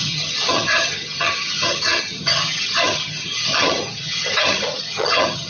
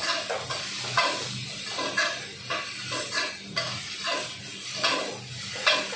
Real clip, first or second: second